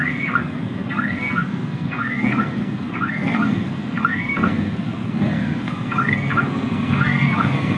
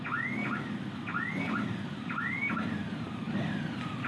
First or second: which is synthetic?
first